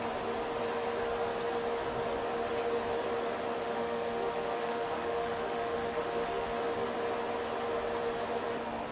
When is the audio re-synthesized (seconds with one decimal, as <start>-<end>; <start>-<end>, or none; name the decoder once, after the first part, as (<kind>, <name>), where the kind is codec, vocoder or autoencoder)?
3.6-6.6 (autoencoder, DAC-VAE)